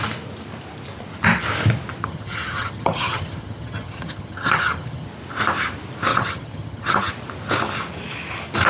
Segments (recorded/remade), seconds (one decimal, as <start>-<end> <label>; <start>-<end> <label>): 0.0-2.0 recorded; 2.0-5.1 remade; 5.1-6.1 recorded; 6.1-7.1 remade; 7.1-8.7 recorded